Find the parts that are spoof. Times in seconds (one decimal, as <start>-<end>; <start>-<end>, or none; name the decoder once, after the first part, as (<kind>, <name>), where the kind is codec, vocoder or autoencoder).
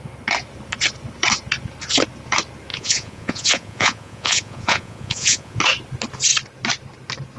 2.7-5.6 (vocoder, Vocos)